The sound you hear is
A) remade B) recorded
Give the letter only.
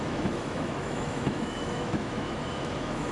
A